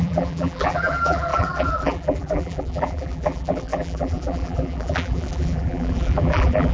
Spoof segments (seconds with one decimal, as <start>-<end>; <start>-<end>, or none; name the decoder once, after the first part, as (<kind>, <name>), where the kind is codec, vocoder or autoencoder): 0.0-6.7 (vocoder, BigVGAN v2)